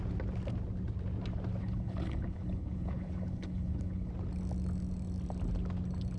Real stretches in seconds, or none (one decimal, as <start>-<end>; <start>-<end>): 0.0-1.6; 4.1-6.2